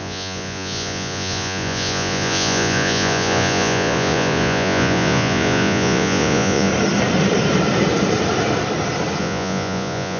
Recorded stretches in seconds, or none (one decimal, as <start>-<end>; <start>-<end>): 6.7-9.2

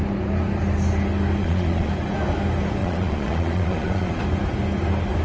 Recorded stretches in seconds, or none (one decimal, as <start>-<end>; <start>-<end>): 0.0-1.4; 1.9-2.8; 4.2-5.2

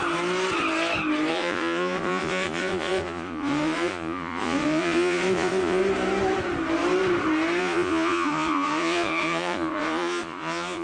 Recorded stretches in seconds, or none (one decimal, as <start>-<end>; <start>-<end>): 0.0-1.3; 5.8-7.6

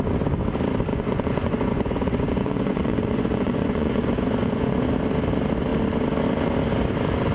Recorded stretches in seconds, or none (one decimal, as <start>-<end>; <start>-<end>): 0.0-0.9; 4.8-7.3

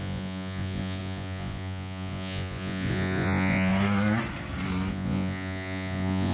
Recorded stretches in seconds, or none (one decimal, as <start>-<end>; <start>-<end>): 3.7-4.9

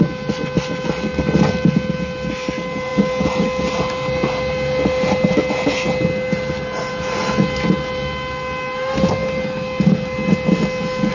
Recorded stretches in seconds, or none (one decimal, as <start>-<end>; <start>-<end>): 0.0-11.1